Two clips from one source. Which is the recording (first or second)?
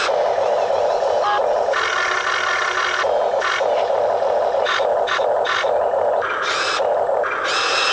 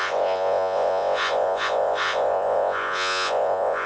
first